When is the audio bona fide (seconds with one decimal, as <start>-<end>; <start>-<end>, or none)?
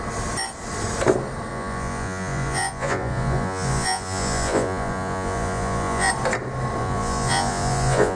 0.0-1.5; 6.1-6.8